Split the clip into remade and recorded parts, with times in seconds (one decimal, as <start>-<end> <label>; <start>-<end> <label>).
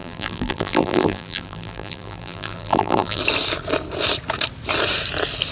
0.0-3.2 remade; 3.2-5.5 recorded